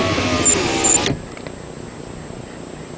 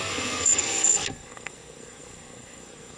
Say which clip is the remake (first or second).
second